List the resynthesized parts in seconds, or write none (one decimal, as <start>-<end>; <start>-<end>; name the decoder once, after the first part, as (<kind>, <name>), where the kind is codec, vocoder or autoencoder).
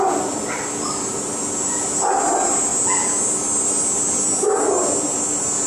none